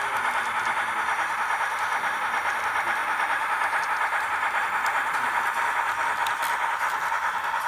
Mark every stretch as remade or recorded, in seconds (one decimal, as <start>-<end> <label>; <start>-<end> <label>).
0.0-3.0 recorded; 3.0-3.8 remade; 3.8-7.7 recorded